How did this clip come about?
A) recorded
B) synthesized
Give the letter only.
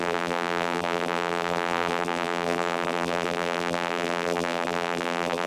B